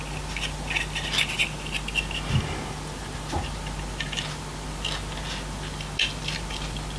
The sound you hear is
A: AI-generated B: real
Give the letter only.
B